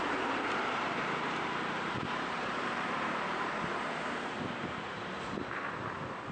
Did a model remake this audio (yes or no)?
yes